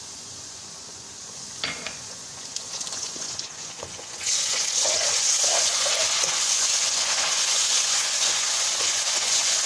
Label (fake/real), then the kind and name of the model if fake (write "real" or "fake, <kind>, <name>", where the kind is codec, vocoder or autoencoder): fake, vocoder, Vocos